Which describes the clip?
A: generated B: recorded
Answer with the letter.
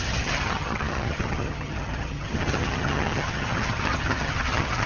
A